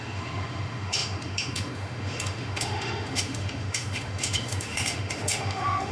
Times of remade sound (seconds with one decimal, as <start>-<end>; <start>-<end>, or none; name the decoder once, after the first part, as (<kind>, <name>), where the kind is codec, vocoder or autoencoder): 0.0-5.9 (autoencoder, DAC-VAE)